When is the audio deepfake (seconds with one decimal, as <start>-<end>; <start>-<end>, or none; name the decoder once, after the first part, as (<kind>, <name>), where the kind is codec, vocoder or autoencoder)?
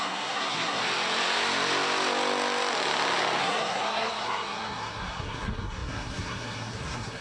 0.0-0.8 (codec, SNAC); 3.4-7.2